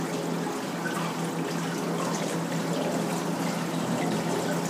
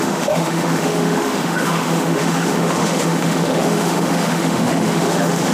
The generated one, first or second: second